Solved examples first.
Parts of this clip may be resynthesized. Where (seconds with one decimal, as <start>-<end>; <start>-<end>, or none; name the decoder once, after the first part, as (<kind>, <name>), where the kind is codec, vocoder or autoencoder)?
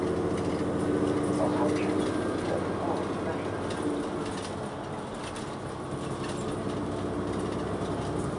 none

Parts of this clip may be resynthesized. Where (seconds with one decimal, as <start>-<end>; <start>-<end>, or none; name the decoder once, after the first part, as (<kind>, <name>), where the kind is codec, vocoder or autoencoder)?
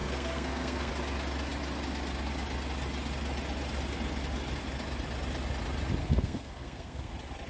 0.0-0.9 (codec, SNAC); 6.0-7.1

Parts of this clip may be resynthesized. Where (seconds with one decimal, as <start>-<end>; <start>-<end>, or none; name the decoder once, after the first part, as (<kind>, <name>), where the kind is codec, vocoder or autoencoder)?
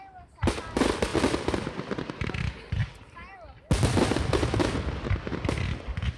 none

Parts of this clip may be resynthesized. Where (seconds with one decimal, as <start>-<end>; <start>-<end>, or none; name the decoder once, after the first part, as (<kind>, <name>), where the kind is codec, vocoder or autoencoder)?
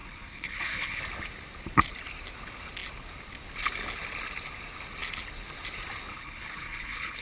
0.0-1.0 (codec, HILCodec); 6.1-7.2